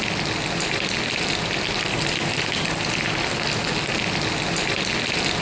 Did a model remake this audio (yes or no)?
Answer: no